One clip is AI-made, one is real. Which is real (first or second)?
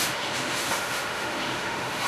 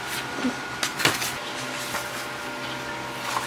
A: second